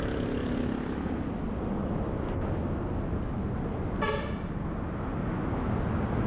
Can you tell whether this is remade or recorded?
recorded